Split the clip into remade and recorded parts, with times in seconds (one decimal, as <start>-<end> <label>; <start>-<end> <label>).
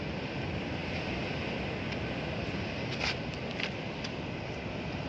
0.0-5.1 recorded